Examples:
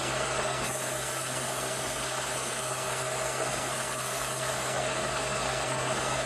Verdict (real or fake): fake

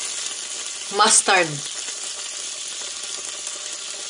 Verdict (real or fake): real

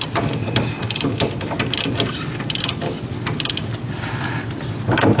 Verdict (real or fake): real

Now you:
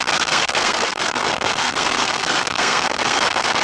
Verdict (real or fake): fake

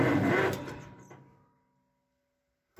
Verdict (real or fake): real